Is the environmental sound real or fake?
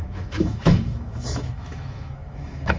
fake